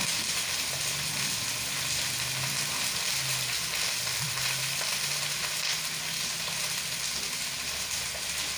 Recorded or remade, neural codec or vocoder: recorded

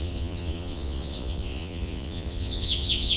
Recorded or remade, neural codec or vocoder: remade, vocoder, Vocos